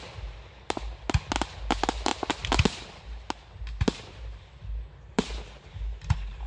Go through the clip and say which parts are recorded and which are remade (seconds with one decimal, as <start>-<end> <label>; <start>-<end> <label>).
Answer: 0.0-6.5 recorded